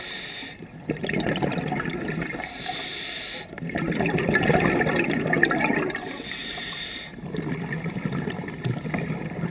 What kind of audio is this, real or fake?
real